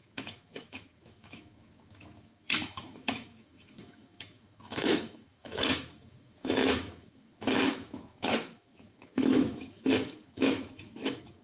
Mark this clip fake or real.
fake